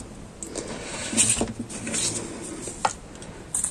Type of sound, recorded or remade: recorded